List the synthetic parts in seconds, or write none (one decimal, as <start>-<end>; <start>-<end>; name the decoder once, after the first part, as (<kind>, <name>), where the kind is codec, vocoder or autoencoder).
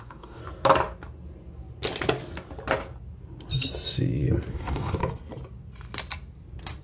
0.0-0.4 (codec, DAC); 4.5-5.0